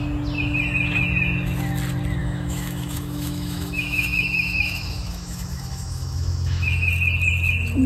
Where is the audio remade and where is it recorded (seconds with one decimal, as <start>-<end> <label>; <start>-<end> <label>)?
0.0-2.2 recorded; 2.2-6.9 remade; 6.9-7.9 recorded